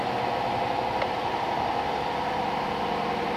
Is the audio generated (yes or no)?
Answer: no